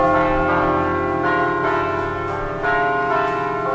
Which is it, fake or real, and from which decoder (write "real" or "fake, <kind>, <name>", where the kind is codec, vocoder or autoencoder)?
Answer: real